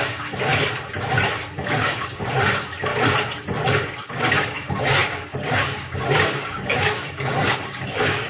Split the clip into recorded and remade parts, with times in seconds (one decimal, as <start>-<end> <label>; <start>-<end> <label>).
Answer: 0.0-0.5 remade; 0.5-1.6 recorded; 1.6-2.9 remade; 2.9-4.1 recorded; 4.1-8.3 remade